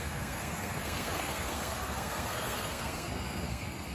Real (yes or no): no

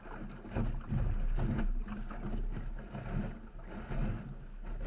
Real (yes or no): yes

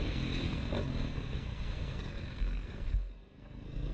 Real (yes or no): no